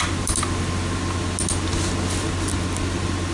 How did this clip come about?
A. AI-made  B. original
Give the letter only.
B